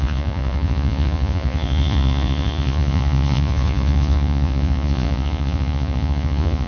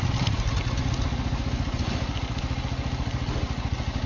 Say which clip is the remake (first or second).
first